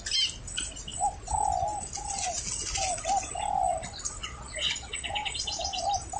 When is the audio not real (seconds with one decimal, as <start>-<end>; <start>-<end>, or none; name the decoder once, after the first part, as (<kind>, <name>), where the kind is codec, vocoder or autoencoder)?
4.2-5.8 (vocoder, Vocos)

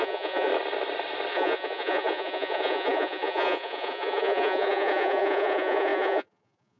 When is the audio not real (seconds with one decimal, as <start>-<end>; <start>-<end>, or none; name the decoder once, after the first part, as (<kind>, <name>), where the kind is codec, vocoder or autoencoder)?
0.0-0.5 (vocoder, Vocos); 1.3-6.8